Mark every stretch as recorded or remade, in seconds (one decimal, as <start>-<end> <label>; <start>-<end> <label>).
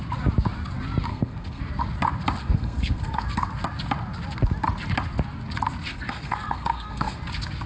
0.0-1.1 recorded; 1.1-1.6 remade; 1.6-2.4 recorded; 2.4-3.2 remade; 3.2-5.9 recorded; 5.9-7.2 remade; 7.2-7.7 recorded